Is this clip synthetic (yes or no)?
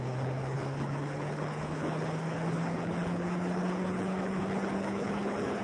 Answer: yes